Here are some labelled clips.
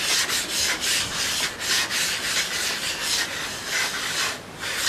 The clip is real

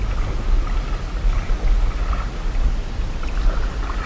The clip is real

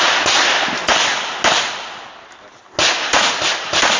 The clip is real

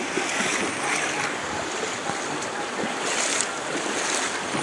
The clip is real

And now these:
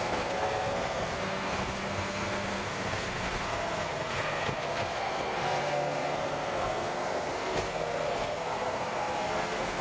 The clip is fake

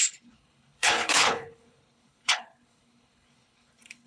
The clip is fake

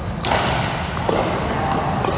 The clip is real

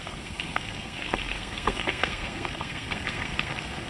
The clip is fake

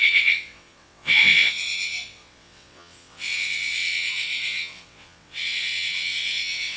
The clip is fake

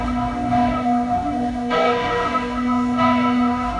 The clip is fake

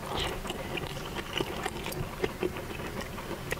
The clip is real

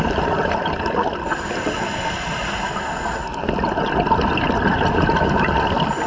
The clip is real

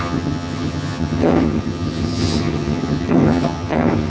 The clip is fake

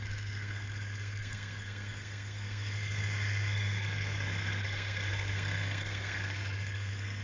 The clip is fake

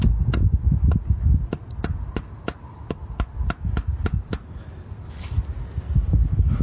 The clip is real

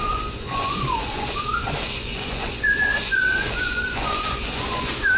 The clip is fake